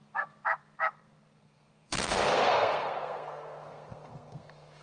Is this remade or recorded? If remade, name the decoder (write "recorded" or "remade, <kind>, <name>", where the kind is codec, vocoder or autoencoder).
remade, codec, SNAC